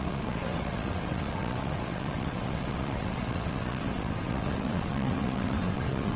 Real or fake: fake